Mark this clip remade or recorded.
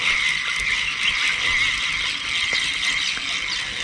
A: recorded